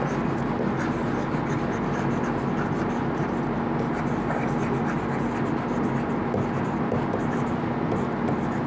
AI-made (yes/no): no